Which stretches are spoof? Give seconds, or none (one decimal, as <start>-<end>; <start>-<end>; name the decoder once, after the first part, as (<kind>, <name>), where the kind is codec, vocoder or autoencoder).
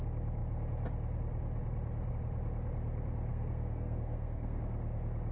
3.3-4.6 (codec, SNAC)